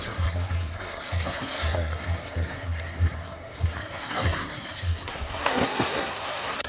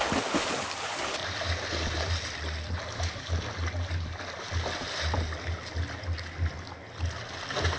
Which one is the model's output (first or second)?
first